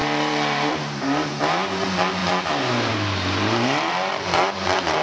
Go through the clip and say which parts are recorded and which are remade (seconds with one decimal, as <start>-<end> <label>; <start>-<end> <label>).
0.0-5.0 remade